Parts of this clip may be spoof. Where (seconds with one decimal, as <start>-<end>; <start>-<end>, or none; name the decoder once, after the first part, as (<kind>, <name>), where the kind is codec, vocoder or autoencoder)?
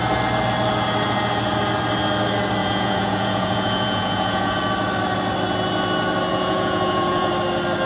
2.6-4.6 (vocoder, Vocos); 6.3-7.3